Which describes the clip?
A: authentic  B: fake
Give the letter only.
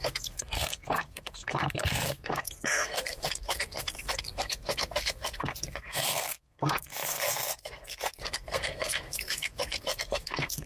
B